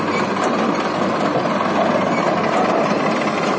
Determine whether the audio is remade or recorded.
recorded